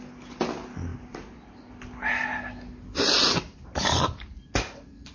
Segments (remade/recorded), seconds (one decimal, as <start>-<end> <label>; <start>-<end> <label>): 0.0-5.1 recorded